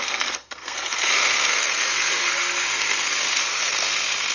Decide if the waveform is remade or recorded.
remade